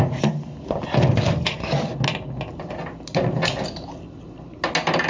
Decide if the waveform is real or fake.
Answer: real